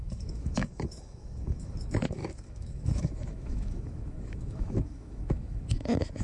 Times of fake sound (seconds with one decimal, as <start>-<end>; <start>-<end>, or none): 0.0-6.2

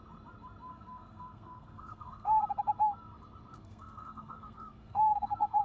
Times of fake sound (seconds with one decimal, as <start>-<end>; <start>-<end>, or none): 0.7-2.4; 3.5-5.6

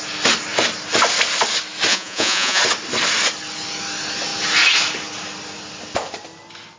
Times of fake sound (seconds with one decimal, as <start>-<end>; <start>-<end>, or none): 1.9-2.6